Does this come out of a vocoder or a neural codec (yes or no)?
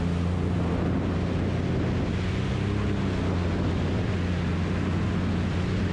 no